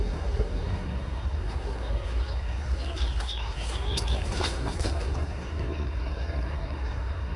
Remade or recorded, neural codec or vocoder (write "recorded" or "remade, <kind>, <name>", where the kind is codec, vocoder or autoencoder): remade, codec, SNAC